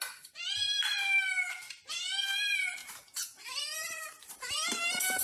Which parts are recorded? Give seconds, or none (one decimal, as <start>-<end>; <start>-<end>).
0.8-1.9